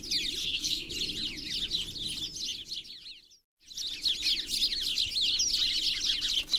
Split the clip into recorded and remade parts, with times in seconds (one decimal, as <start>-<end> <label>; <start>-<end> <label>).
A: 0.0-0.4 recorded; 0.4-0.9 remade; 0.9-6.6 recorded